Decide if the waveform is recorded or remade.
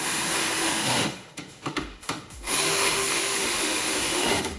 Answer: remade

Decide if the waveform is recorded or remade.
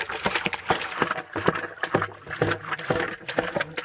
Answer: recorded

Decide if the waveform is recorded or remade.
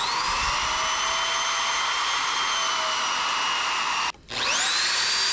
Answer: recorded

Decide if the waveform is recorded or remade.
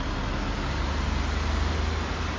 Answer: recorded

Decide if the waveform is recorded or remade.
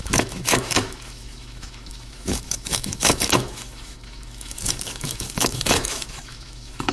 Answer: remade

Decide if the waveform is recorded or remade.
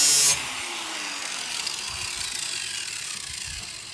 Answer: recorded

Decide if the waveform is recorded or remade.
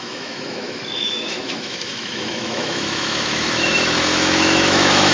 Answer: remade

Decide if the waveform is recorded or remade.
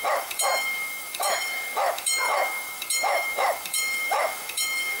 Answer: remade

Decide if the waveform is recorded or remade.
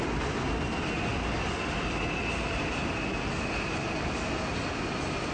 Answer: recorded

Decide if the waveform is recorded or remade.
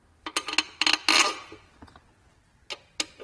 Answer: recorded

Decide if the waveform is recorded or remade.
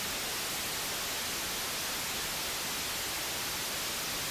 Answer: recorded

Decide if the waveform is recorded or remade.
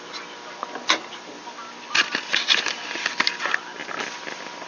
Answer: recorded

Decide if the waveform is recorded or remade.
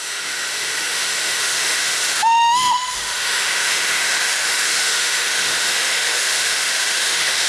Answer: remade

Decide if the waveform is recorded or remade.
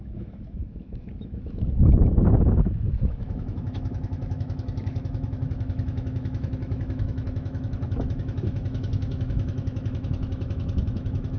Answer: remade